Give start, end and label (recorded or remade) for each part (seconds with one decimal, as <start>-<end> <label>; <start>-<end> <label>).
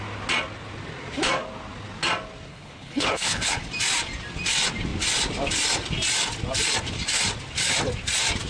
0.0-2.5 recorded; 2.5-3.6 remade; 3.6-8.5 recorded